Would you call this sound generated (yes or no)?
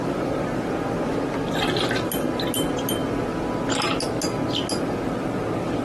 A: no